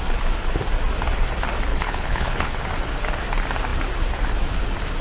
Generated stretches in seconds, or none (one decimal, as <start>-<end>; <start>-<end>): 1.7-2.6